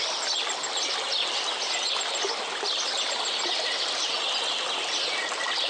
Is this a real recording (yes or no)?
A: yes